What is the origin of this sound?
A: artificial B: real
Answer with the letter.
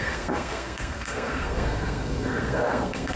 A